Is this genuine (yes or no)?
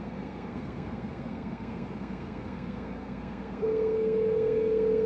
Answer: no